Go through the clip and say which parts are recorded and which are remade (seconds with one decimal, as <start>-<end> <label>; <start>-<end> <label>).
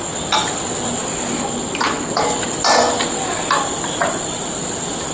0.0-5.1 recorded